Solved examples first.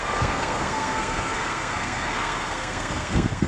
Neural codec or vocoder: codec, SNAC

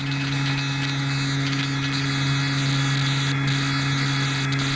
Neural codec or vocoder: none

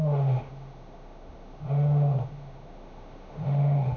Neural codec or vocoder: autoencoder, DAC-VAE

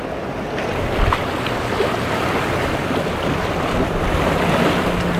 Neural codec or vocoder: none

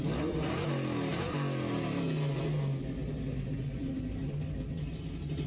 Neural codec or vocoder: none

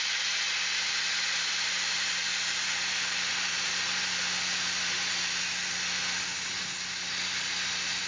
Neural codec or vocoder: none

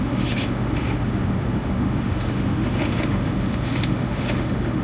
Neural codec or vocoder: autoencoder, DAC-VAE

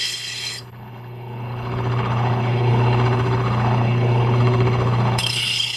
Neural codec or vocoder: codec, HILCodec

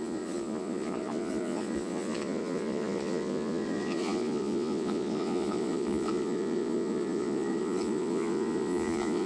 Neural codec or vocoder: vocoder, Vocos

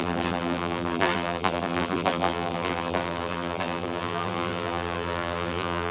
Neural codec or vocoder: vocoder, BigVGAN v2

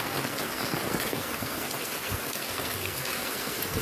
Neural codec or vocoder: codec, SNAC